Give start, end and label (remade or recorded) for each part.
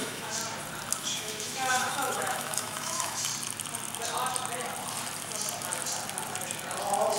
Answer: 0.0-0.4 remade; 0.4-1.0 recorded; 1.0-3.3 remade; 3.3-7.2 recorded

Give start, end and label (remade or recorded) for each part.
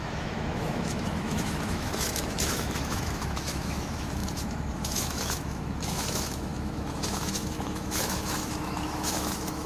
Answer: 0.0-9.7 remade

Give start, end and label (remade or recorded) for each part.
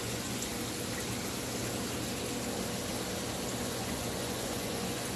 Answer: 0.0-0.5 remade; 0.5-3.6 recorded; 3.6-5.2 remade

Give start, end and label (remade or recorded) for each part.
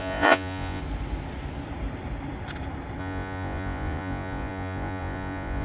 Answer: 0.0-0.8 remade; 0.8-3.0 recorded; 3.0-5.6 remade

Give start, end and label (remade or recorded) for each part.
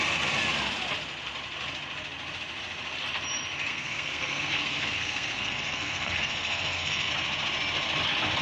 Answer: 0.0-3.7 recorded; 3.7-7.1 remade; 7.1-8.4 recorded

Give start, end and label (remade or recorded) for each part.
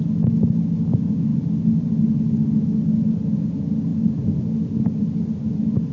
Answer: 0.0-5.9 recorded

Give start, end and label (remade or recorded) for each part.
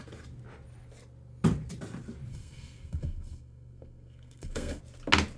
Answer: 0.0-2.3 recorded; 2.3-4.8 remade; 4.8-5.4 recorded